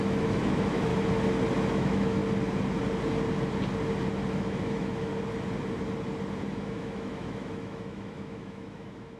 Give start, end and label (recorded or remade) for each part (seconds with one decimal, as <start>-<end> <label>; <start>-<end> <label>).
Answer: 0.0-0.9 remade; 0.9-1.7 recorded; 1.7-2.2 remade; 2.2-4.3 recorded; 4.3-5.1 remade; 5.1-6.5 recorded; 6.5-9.2 remade